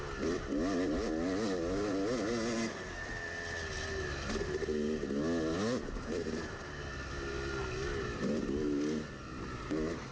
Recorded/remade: recorded